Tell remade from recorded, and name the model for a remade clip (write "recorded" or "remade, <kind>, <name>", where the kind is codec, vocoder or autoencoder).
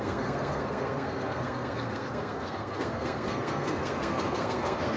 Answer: remade, codec, SNAC